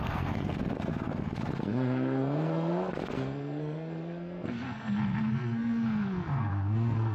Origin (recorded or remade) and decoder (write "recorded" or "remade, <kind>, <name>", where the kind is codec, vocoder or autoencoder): remade, codec, SNAC